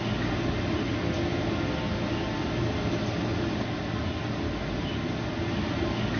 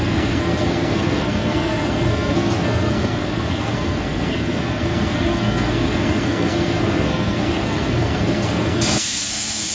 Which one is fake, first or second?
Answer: second